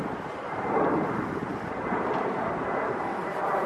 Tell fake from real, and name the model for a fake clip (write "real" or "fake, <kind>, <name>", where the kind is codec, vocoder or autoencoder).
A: fake, vocoder, BigVGAN v2